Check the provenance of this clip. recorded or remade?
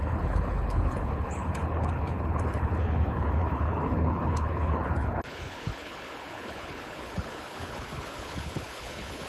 remade